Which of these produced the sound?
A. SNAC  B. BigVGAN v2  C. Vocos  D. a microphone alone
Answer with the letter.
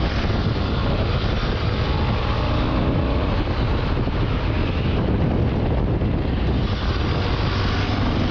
D